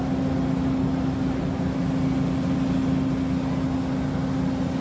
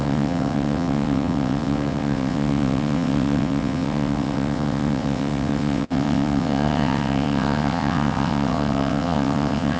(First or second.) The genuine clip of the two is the first